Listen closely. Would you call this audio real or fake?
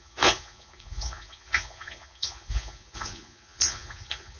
fake